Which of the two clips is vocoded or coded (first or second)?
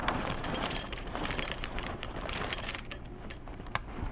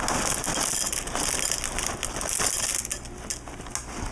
first